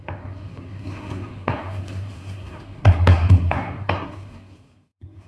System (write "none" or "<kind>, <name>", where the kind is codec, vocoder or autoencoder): codec, SNAC